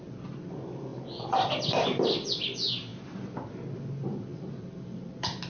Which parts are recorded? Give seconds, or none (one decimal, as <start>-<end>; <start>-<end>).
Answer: 0.0-5.5